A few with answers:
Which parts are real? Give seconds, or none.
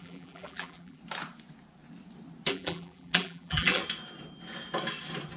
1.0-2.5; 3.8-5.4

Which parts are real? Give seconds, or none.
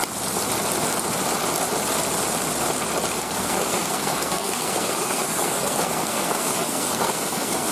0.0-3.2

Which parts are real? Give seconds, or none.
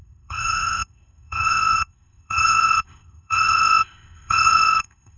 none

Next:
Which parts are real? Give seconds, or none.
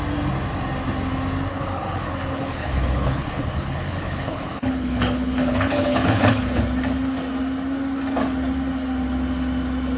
0.0-1.5; 6.6-10.0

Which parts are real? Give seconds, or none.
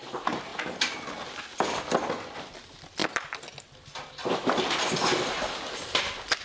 0.0-6.4